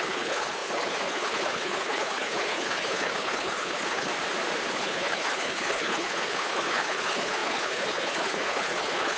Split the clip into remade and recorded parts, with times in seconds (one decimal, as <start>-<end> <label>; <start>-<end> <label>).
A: 0.0-4.1 remade; 4.1-4.7 recorded; 4.7-9.2 remade